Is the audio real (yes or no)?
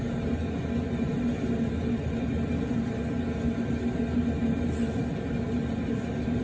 yes